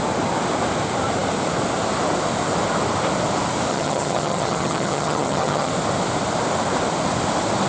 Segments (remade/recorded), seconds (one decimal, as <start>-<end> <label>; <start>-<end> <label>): 0.0-3.7 recorded; 3.7-5.7 remade; 5.7-7.7 recorded